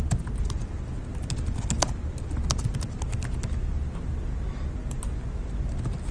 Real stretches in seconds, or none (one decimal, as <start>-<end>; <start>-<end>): 0.0-6.1